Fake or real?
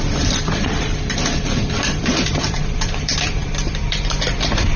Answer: fake